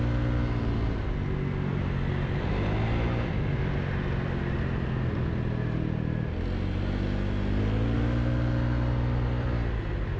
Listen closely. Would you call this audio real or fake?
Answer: real